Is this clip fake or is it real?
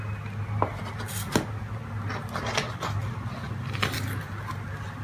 real